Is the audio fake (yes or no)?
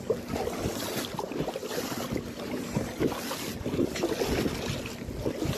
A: no